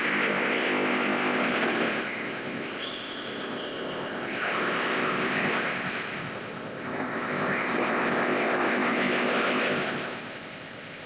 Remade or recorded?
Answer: remade